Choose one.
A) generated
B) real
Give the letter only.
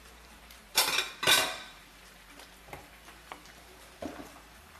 A